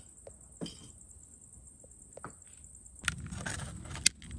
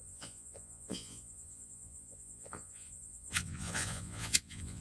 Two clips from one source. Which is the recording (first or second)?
first